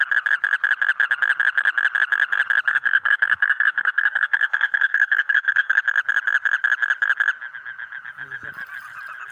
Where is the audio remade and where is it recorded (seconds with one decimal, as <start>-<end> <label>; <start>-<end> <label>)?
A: 0.0-2.7 recorded; 2.7-5.8 remade; 5.8-9.3 recorded